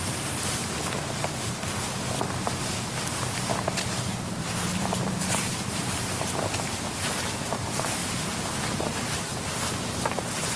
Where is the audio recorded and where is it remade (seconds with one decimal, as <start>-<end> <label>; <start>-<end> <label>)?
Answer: 0.0-0.6 remade; 0.6-4.4 recorded; 4.4-8.0 remade; 8.0-8.8 recorded; 8.8-9.3 remade; 9.3-10.2 recorded; 10.2-10.6 remade